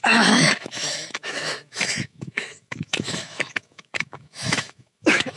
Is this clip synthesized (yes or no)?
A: yes